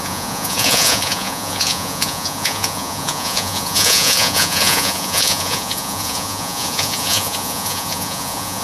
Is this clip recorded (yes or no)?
no